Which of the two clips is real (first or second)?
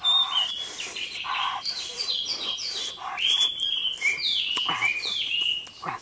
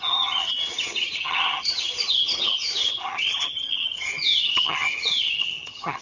first